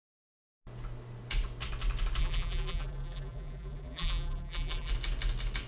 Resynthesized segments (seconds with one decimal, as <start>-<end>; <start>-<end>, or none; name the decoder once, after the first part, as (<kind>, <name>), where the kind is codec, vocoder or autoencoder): 2.2-4.9 (vocoder, BigVGAN v2)